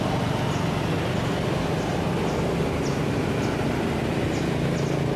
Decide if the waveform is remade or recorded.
recorded